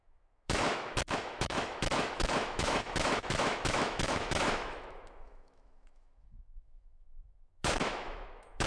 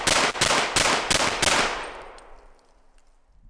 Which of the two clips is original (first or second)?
second